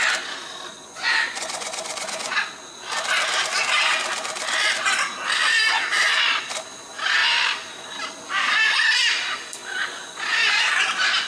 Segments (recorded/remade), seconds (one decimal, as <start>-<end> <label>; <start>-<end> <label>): 0.0-0.8 recorded; 0.8-2.3 remade; 2.3-9.9 recorded; 9.9-10.6 remade; 10.6-11.3 recorded